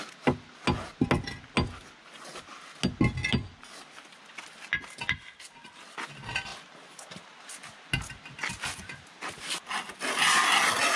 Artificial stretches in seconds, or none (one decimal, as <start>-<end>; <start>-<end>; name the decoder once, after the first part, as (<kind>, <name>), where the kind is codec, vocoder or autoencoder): none

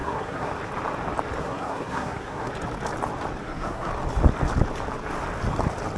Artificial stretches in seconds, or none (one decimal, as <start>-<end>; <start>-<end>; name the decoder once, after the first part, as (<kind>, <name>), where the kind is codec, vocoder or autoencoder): 0.0-0.5 (codec, SNAC); 1.4-2.5; 3.4-3.9